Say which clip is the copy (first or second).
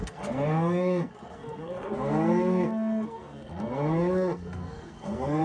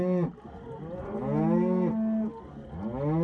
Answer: first